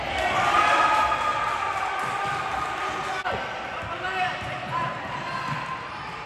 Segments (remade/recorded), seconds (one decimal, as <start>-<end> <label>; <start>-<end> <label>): 0.0-6.3 recorded